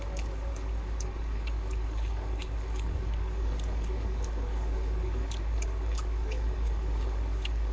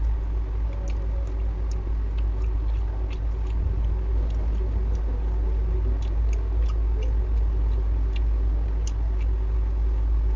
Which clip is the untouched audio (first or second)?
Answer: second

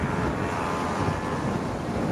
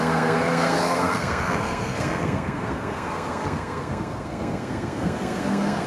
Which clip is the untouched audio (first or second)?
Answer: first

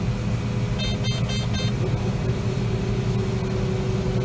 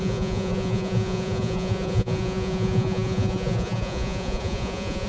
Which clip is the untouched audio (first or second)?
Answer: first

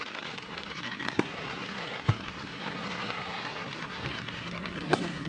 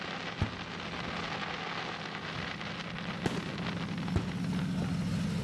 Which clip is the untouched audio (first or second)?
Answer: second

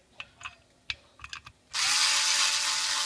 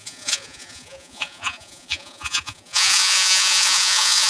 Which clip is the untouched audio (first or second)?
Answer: first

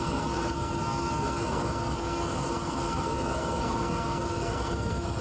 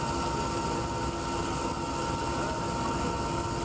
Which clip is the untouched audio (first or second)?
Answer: second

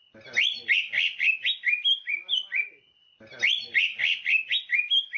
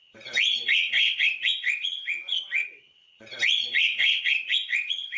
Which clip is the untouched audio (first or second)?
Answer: first